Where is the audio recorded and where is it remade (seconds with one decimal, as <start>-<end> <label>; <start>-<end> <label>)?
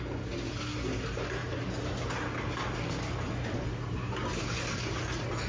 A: 0.0-5.5 recorded